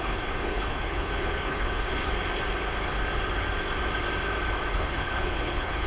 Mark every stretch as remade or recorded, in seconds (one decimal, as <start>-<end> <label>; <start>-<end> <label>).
0.0-2.1 remade; 2.1-4.7 recorded; 4.7-5.9 remade